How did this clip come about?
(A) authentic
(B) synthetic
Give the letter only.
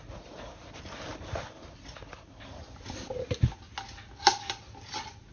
A